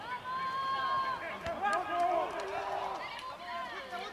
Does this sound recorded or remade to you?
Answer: recorded